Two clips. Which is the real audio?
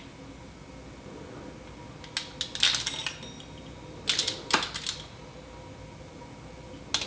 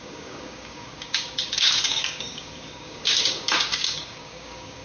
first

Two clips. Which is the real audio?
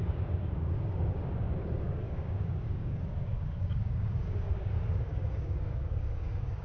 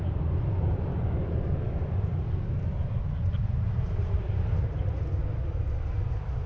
second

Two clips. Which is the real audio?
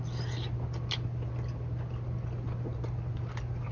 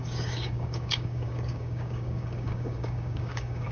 first